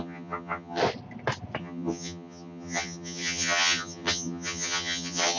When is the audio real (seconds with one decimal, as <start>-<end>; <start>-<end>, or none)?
0.8-1.6